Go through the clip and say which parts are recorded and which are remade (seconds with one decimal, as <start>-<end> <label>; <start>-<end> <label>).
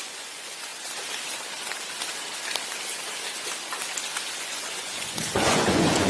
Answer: 0.0-0.7 remade; 0.7-4.4 recorded; 4.4-6.1 remade